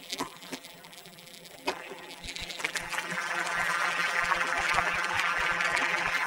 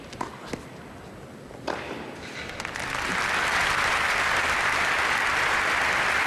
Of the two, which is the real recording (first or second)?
second